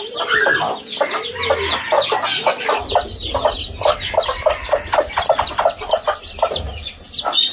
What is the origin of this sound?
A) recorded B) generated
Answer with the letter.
A